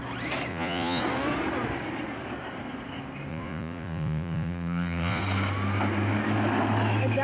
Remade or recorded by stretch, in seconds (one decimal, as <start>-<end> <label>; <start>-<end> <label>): 0.0-0.5 recorded; 0.5-1.0 remade; 1.0-3.3 recorded; 3.3-5.2 remade; 5.2-7.2 recorded